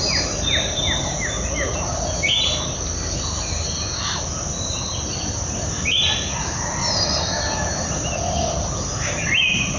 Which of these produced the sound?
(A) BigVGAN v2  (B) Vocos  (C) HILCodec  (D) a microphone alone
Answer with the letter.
D